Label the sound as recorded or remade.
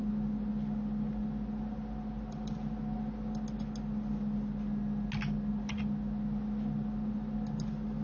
recorded